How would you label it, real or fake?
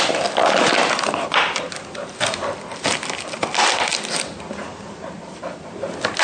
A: real